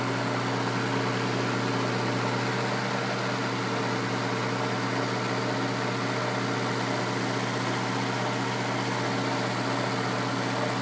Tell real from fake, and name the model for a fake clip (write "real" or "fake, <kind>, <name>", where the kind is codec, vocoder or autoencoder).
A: real